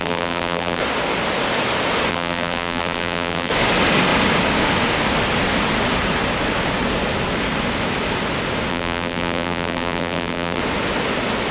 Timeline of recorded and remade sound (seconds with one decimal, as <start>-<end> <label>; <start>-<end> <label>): 0.0-0.8 remade; 0.8-2.1 recorded; 2.1-3.5 remade; 3.5-8.7 recorded; 8.7-10.6 remade; 10.6-11.5 recorded